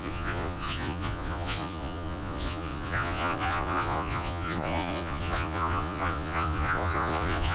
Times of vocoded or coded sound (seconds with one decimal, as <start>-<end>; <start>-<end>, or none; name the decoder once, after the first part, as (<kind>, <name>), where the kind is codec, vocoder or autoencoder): 0.0-7.5 (vocoder, Vocos)